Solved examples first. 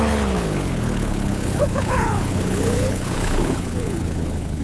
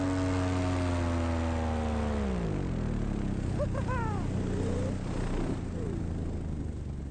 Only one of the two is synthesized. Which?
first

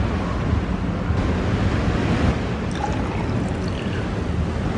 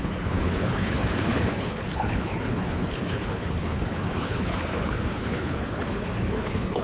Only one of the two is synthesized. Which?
second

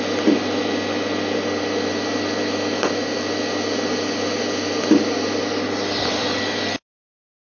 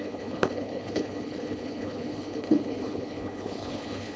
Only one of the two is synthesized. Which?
second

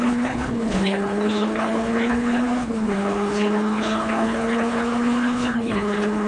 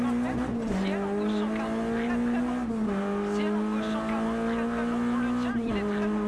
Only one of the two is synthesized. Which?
first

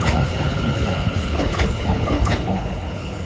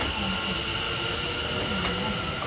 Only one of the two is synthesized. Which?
first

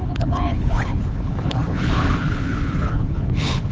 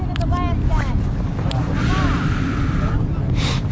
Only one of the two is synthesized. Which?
first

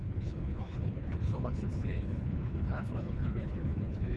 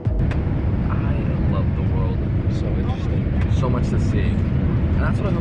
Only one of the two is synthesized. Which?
first